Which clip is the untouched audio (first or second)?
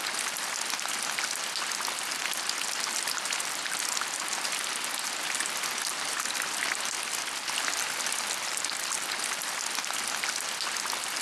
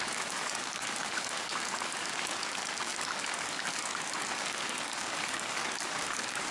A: first